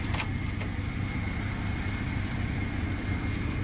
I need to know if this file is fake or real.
real